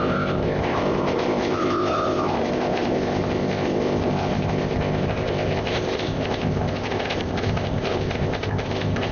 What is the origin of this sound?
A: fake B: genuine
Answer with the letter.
A